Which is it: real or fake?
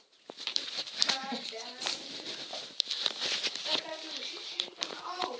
fake